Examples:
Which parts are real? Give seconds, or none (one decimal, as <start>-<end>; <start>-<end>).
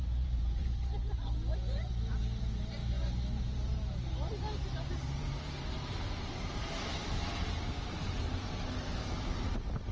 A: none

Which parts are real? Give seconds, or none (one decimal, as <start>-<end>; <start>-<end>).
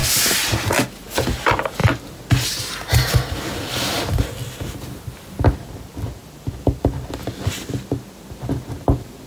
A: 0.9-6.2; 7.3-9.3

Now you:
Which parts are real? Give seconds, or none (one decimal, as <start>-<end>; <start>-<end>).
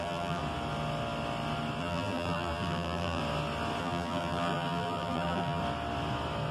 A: 0.4-1.8; 3.2-3.8; 5.6-6.5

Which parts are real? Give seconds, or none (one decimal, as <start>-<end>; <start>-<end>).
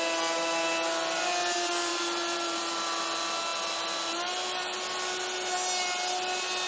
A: 0.0-1.9; 2.6-6.7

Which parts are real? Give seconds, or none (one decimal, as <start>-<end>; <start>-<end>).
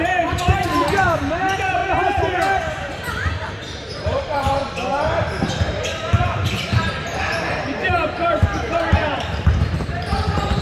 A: 1.8-3.5; 4.6-6.4